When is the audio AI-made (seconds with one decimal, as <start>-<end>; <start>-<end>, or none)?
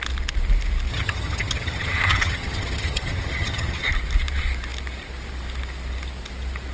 0.9-3.9